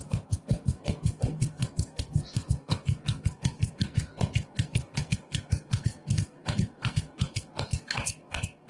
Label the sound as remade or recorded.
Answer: remade